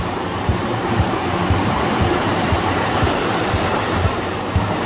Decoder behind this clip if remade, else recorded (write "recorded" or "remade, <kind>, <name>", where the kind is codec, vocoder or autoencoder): remade, vocoder, BigVGAN v2